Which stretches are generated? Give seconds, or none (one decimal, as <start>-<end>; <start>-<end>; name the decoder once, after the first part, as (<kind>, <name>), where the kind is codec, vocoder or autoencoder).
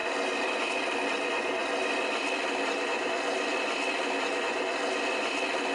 none